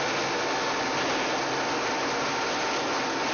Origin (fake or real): real